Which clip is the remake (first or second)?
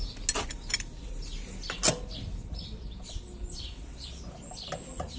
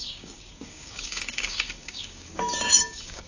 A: second